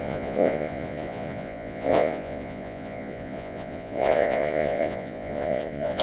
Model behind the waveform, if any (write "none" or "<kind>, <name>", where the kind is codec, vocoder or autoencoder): vocoder, Vocos